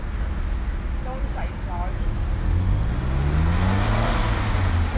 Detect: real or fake real